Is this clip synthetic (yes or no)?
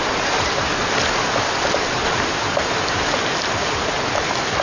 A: yes